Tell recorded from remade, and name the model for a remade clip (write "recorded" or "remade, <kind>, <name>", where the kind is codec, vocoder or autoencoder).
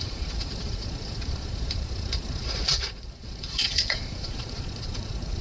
remade, vocoder, Vocos